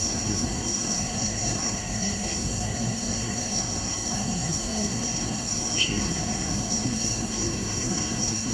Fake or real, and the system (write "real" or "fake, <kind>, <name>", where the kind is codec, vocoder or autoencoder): fake, codec, SNAC